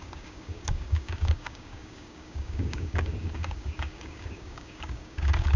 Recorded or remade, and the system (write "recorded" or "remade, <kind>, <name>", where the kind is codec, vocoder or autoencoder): remade, codec, DAC